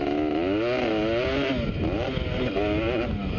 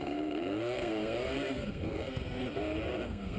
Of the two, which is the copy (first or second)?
second